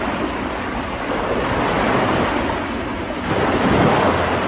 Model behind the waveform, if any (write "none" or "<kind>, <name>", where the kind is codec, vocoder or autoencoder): none